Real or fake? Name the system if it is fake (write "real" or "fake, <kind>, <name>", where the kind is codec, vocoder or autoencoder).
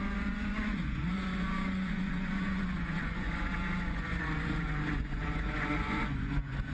fake, vocoder, Vocos